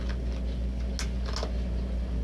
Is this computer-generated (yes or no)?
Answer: no